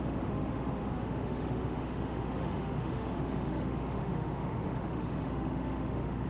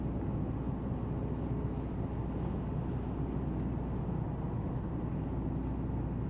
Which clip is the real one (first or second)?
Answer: second